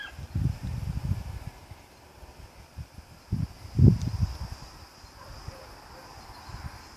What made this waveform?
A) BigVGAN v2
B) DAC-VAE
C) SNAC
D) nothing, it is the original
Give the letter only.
D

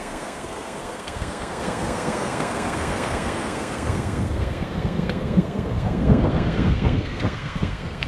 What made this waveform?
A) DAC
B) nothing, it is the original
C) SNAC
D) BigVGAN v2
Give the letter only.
C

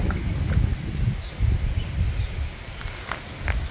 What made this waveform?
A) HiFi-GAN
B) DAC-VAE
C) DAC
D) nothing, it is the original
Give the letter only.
D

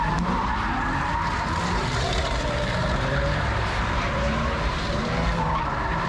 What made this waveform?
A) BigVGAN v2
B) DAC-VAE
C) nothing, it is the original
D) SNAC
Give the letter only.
A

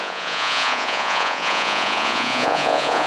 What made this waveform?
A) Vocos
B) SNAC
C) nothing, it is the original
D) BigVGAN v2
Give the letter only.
A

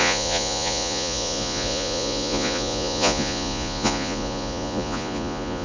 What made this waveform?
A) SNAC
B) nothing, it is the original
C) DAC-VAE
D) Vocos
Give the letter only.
D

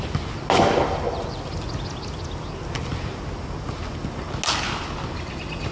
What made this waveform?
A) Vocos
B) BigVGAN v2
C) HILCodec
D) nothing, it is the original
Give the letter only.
D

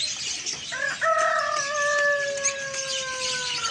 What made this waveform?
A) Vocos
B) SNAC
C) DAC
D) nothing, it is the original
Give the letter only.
D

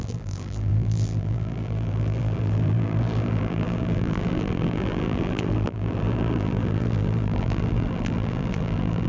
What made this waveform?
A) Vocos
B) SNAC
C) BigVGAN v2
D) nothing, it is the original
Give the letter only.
C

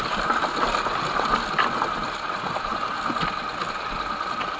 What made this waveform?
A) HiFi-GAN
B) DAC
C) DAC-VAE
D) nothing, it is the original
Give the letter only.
D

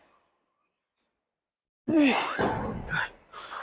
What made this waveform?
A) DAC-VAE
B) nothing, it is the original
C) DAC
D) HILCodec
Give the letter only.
B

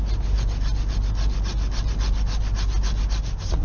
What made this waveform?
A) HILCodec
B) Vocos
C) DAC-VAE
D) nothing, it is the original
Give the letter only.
D